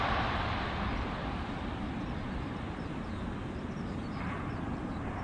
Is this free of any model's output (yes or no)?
yes